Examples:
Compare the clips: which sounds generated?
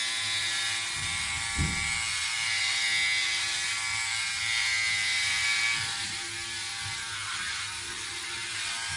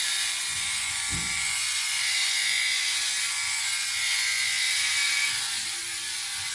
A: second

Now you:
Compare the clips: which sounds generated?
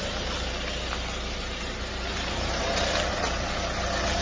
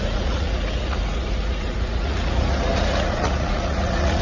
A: second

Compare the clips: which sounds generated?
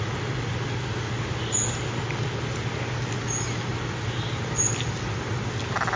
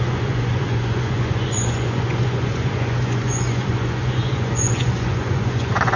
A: second